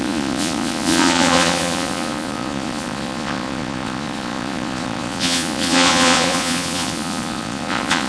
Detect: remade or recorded remade